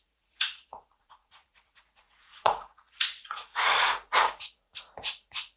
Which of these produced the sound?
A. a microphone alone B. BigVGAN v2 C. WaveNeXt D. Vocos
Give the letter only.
D